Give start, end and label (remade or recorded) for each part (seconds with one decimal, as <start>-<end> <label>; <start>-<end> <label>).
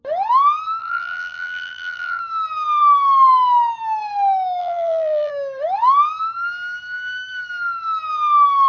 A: 0.0-0.8 recorded; 0.8-2.2 remade; 2.2-4.6 recorded; 4.6-5.3 remade; 5.3-8.7 recorded